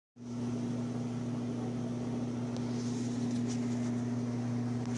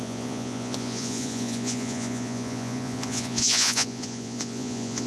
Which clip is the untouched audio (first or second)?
first